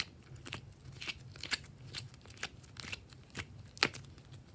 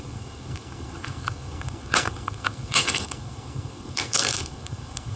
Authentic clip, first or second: first